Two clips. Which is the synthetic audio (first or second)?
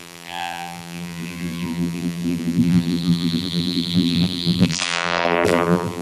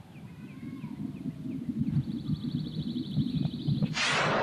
first